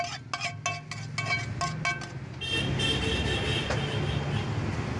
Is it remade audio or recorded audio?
recorded